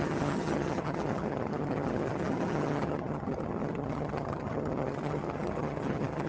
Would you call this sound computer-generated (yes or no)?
yes